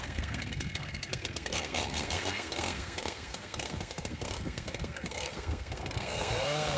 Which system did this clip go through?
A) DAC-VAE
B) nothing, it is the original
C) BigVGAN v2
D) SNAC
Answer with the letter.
D